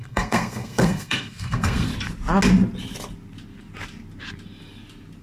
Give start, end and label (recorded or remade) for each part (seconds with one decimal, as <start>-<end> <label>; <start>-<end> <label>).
0.0-1.9 remade; 1.9-5.2 recorded